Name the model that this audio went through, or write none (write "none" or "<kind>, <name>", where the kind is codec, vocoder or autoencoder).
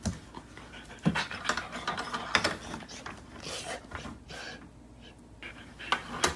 none